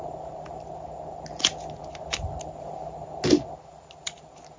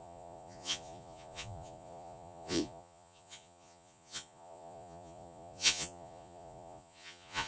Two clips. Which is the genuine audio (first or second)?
first